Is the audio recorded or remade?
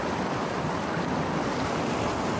recorded